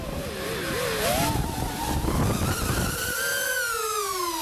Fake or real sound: real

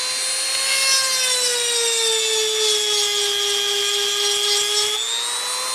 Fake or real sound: real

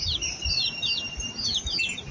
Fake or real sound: real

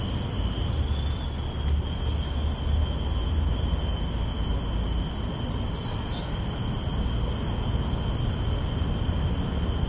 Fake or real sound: real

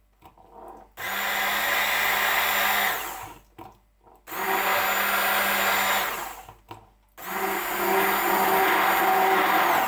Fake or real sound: real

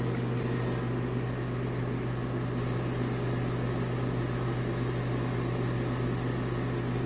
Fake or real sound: real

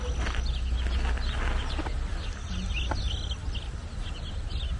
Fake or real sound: real